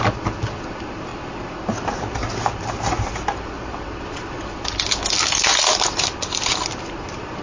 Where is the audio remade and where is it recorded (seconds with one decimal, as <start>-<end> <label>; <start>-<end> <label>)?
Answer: 0.0-7.4 recorded